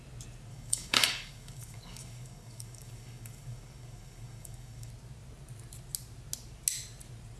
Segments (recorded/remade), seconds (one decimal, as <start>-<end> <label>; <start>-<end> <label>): 0.0-0.5 recorded; 0.5-4.9 remade; 4.9-7.4 recorded